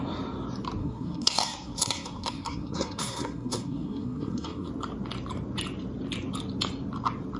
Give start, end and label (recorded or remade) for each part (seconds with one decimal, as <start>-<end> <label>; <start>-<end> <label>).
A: 0.0-0.8 recorded; 0.8-4.7 remade; 4.7-7.4 recorded